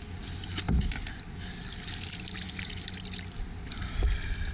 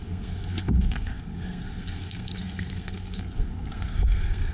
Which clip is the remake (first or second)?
second